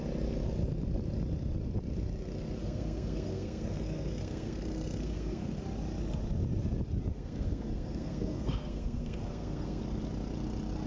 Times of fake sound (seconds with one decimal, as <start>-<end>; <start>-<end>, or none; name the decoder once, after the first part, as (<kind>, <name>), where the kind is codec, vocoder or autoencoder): 2.6-5.6 (codec, SNAC); 7.1-9.8